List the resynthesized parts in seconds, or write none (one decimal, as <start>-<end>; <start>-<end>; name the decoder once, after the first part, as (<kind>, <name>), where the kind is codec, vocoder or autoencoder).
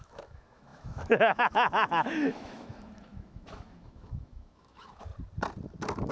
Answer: 0.0-5.1 (autoencoder, DAC-VAE)